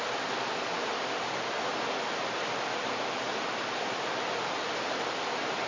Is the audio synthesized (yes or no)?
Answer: no